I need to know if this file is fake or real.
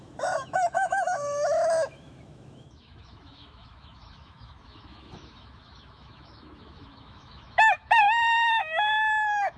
fake